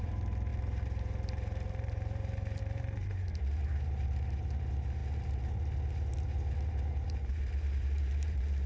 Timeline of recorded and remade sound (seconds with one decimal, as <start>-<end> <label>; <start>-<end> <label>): 0.0-8.7 remade